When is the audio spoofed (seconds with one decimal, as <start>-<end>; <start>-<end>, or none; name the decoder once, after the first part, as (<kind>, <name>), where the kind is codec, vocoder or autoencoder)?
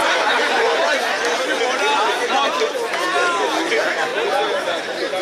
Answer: none